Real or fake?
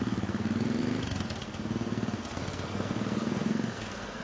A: fake